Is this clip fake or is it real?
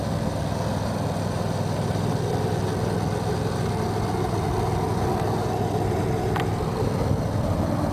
real